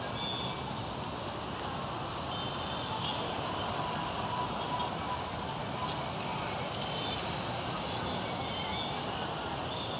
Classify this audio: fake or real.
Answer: real